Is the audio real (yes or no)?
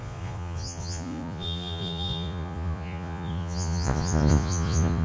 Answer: no